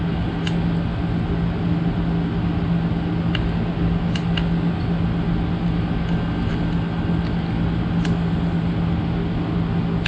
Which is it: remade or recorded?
recorded